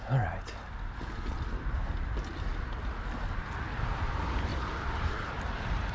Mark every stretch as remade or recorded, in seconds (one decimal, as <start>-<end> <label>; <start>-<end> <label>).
0.0-5.9 recorded